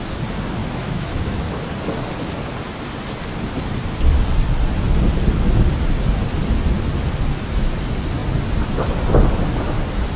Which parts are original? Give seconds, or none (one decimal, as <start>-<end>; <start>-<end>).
0.0-0.6; 1.6-10.2